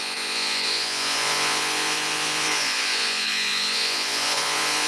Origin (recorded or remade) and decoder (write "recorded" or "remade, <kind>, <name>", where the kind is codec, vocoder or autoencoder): remade, vocoder, Vocos